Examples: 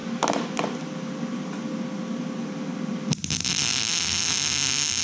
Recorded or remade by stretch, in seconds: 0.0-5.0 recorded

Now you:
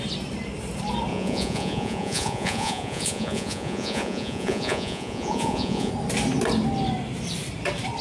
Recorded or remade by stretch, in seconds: 0.0-1.1 recorded; 1.1-5.9 remade; 5.9-8.0 recorded

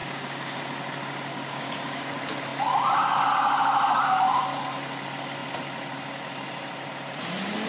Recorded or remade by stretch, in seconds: 0.0-0.6 remade; 0.6-1.3 recorded; 1.3-2.1 remade; 2.1-7.7 recorded

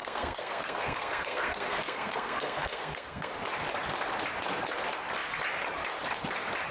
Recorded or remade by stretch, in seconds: 0.0-3.3 remade; 3.3-6.7 recorded